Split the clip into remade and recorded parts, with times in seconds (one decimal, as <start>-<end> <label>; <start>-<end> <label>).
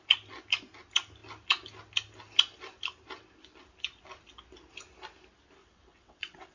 0.0-5.6 recorded; 5.6-6.5 remade